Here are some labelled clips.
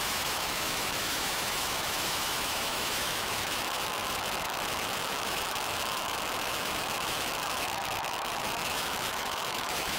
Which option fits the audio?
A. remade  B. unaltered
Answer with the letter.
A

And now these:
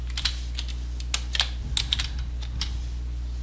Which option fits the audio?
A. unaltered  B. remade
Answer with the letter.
A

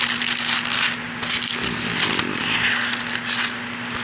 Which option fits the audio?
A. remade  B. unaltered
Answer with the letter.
B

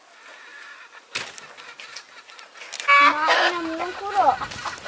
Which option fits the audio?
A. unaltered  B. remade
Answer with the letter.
A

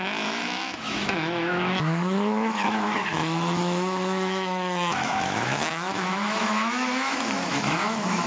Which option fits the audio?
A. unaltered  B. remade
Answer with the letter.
B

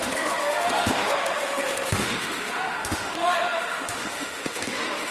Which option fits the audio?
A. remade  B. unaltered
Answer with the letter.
A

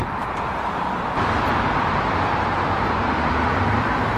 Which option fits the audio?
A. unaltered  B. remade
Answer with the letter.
A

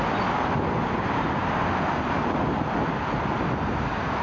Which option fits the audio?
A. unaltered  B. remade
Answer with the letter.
A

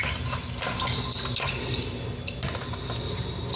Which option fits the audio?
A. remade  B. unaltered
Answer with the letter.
B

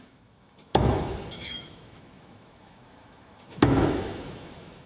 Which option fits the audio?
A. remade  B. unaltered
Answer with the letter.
A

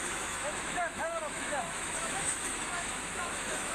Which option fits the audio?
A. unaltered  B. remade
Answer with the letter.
B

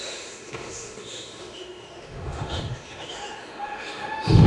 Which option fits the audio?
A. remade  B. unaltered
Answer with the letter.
A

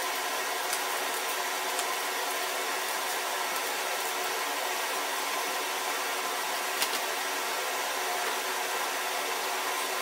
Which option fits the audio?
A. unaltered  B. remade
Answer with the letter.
A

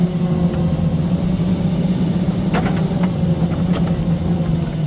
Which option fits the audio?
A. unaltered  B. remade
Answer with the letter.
A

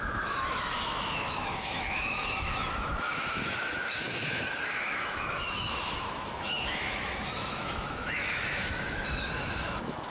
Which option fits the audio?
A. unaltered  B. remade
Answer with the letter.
B